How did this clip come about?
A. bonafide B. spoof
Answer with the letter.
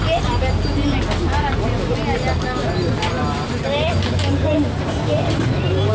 A